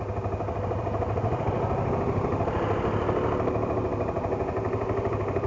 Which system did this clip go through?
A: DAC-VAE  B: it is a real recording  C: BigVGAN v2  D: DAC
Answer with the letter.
B